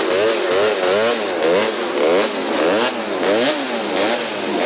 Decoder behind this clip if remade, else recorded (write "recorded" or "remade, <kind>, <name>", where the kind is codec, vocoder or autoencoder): recorded